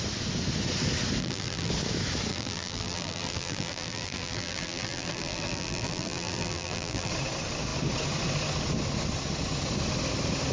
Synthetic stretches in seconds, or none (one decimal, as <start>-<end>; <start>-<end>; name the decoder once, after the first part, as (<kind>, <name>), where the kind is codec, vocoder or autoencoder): 1.2-1.7 (vocoder, BigVGAN v2); 2.3-7.1